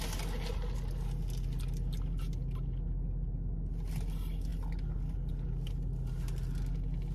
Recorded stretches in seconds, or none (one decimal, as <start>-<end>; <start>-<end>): 0.0-7.1